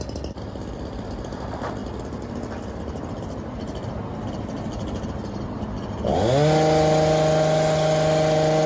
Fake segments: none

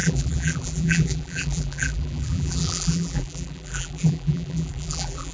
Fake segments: 0.0-5.3 (vocoder, BigVGAN v2)